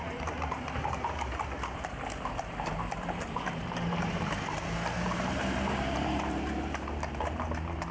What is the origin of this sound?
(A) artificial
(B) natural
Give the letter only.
A